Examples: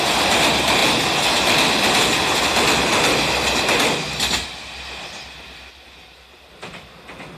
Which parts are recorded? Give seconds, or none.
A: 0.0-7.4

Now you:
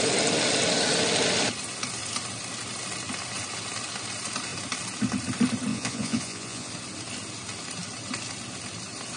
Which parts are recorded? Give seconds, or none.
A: 0.0-5.7; 6.7-9.2

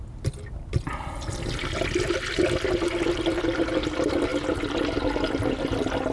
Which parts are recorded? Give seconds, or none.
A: 0.0-6.1

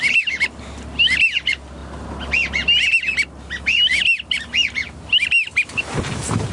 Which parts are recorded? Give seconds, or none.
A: 0.0-6.5

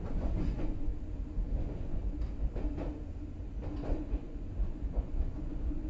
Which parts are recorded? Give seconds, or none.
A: 0.9-1.6; 2.0-3.7

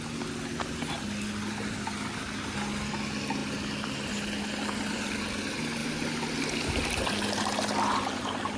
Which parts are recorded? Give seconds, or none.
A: 0.0-8.6